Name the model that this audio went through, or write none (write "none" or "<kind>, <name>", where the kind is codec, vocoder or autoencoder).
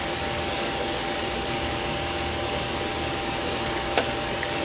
codec, DAC